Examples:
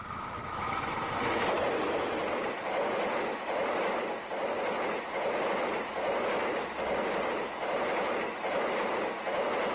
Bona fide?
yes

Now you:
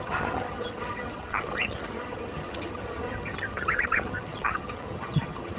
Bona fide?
no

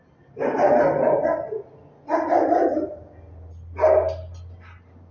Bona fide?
yes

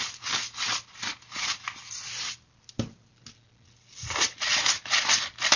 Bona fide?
yes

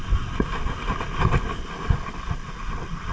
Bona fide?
yes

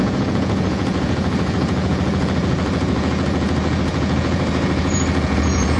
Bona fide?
no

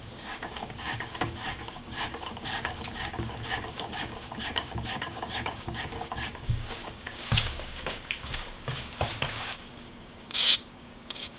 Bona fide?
no